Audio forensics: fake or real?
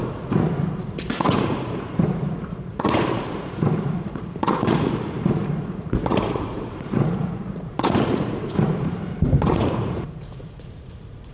fake